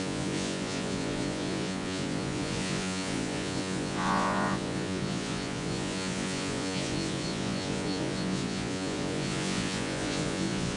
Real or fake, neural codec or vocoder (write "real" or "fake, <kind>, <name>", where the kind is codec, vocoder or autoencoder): fake, vocoder, Vocos